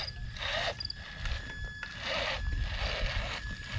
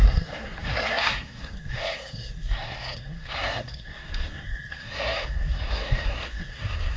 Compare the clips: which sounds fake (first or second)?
second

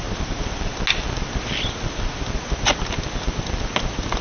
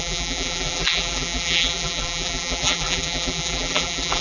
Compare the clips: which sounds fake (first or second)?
second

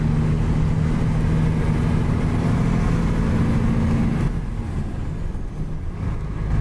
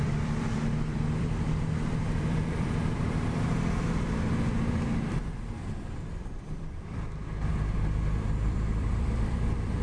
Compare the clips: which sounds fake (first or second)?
second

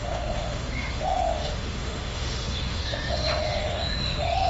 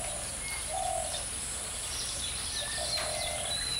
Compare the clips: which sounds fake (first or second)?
first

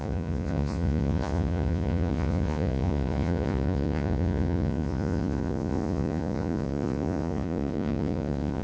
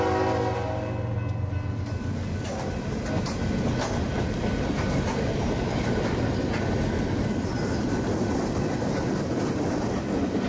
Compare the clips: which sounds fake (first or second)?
first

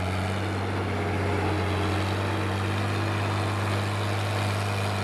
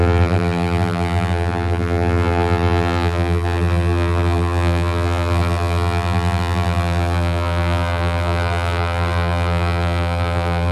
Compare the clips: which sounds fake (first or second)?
second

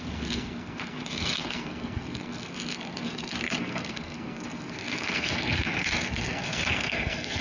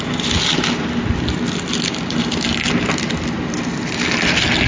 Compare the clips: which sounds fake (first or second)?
first